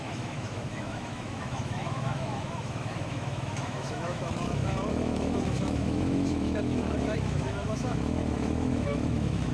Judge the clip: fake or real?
fake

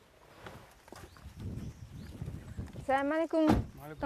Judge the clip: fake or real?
real